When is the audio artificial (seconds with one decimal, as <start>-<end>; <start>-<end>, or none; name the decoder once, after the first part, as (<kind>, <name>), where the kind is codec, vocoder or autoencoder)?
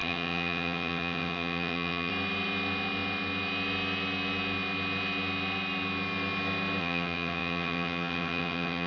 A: 0.0-2.1 (vocoder, HiFi-GAN); 6.8-8.9